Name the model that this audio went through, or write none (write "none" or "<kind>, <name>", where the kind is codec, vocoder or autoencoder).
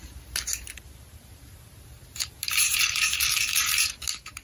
vocoder, BigVGAN v2